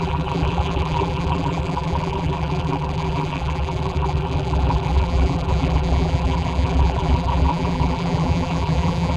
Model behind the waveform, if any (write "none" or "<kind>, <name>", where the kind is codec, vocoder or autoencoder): vocoder, BigVGAN v2